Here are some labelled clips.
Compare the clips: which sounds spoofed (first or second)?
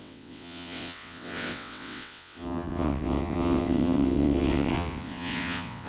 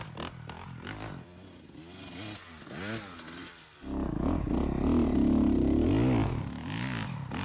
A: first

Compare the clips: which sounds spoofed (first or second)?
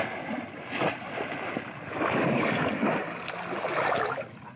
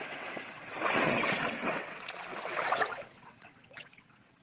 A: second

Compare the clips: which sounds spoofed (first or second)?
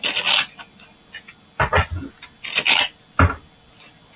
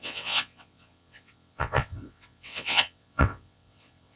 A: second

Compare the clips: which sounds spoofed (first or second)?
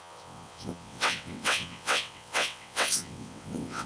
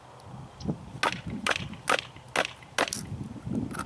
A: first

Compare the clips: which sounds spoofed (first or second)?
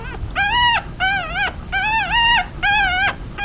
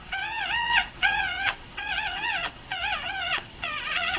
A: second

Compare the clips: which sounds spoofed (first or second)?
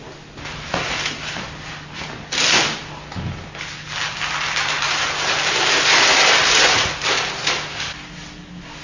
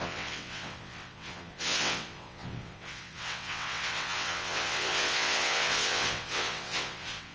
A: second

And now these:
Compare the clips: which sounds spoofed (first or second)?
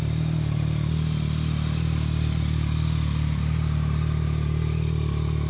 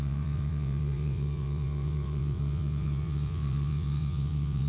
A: second